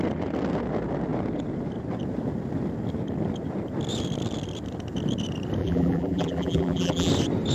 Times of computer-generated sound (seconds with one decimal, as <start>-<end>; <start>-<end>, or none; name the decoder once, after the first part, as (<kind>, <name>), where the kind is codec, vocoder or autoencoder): 5.6-7.1 (vocoder, BigVGAN v2)